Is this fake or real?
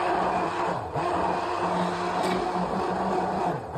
real